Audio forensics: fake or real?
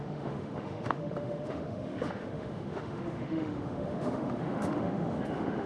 fake